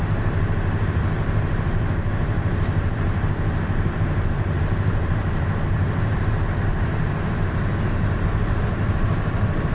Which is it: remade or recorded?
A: remade